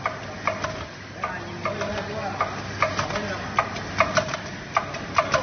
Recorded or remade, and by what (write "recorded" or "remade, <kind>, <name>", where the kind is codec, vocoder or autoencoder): recorded